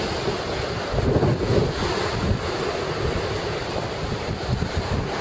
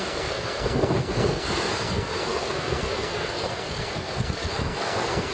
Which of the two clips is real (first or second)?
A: first